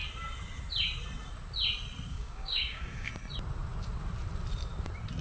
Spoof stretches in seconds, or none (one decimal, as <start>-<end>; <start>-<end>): 2.1-3.1

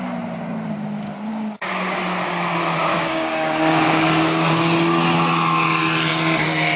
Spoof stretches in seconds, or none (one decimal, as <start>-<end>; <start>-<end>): 1.3-2.0; 2.9-4.5

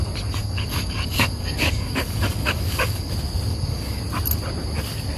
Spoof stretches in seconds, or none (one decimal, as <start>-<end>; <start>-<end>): 0.4-3.1; 3.5-4.0

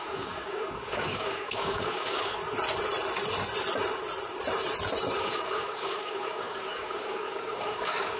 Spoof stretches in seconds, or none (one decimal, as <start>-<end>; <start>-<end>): 0.0-2.4; 5.2-8.2